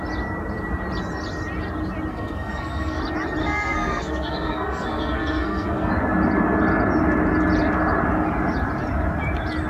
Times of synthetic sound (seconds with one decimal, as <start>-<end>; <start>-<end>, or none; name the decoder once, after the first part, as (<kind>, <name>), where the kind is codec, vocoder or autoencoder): 2.1-3.0 (codec, SNAC); 3.4-5.9